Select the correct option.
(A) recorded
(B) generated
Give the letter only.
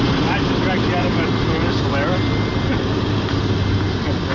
A